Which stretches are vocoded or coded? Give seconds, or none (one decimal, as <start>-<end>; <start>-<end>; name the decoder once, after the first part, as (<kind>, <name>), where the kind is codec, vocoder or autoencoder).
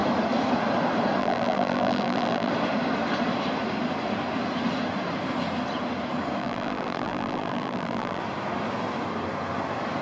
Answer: 1.2-2.5 (vocoder, BigVGAN v2); 6.4-8.2